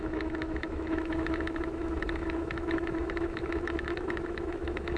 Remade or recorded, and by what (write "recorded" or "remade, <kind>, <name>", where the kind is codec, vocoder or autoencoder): remade, autoencoder, DAC-VAE